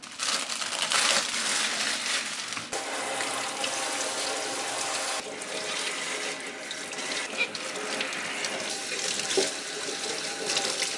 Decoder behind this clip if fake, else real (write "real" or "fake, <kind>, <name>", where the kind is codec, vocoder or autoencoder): real